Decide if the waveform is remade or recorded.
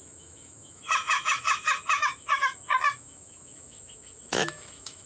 remade